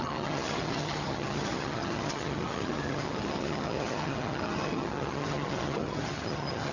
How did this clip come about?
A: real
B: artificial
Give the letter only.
B